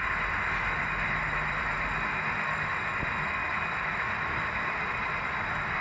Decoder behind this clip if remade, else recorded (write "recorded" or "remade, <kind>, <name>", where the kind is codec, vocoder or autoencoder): recorded